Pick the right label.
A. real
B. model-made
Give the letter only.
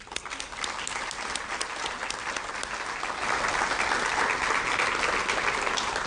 A